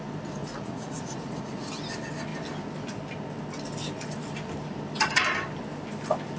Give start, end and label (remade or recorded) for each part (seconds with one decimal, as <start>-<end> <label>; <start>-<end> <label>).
0.0-0.4 recorded; 0.4-1.7 remade; 1.7-6.4 recorded